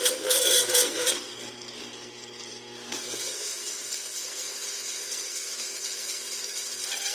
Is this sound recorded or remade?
remade